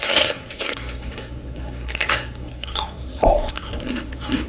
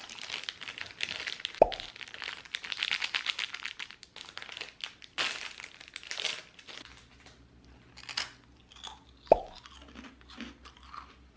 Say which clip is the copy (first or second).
first